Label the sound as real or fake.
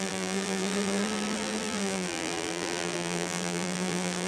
fake